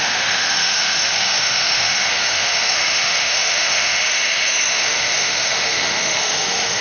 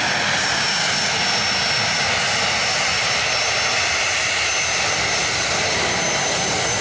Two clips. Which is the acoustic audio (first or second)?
second